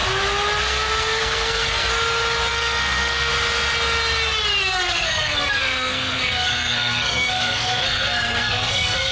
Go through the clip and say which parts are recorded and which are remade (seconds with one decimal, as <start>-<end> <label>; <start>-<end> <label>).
0.0-0.6 recorded; 0.6-1.9 remade; 1.9-2.5 recorded; 2.5-3.3 remade; 3.3-4.6 recorded; 4.6-9.1 remade